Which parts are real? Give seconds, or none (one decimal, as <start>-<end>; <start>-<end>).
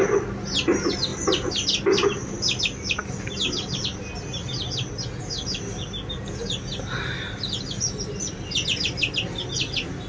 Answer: 0.0-10.1